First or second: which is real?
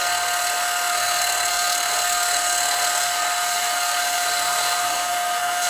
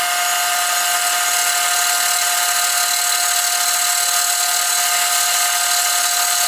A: second